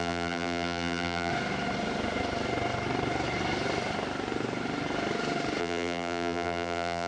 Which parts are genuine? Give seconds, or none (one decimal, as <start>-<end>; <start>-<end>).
1.3-5.6